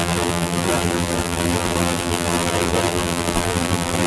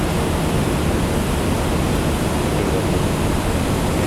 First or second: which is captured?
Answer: second